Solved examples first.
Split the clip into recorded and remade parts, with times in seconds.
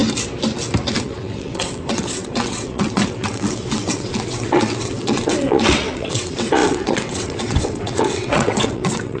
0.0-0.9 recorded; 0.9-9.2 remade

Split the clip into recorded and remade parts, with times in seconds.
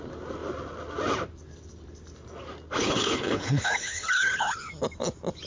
0.0-2.8 recorded; 2.8-4.7 remade; 4.7-5.5 recorded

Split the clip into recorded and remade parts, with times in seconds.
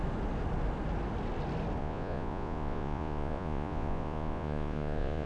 0.0-1.8 recorded; 1.8-5.3 remade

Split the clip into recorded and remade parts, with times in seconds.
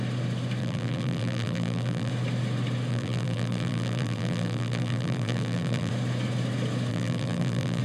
0.0-0.6 recorded; 0.6-2.1 remade; 2.1-2.9 recorded; 2.9-5.9 remade; 5.9-6.9 recorded; 6.9-7.8 remade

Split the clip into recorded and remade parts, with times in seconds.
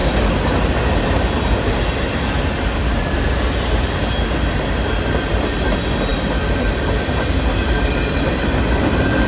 0.0-9.3 recorded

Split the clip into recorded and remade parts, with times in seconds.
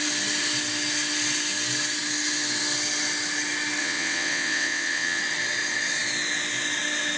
0.0-3.8 recorded; 3.8-5.2 remade; 5.2-7.2 recorded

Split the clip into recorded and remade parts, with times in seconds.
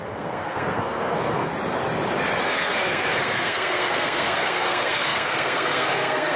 0.0-1.5 remade; 1.5-2.4 recorded; 2.4-6.4 remade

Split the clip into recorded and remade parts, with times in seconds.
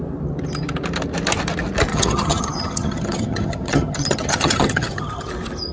0.0-1.9 recorded; 1.9-5.3 remade; 5.3-5.7 recorded